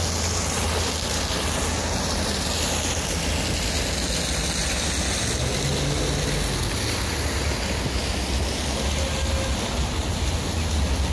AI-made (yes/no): no